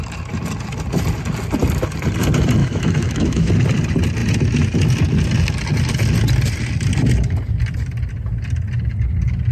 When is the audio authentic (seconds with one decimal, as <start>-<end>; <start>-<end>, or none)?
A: 0.0-2.6; 3.5-9.5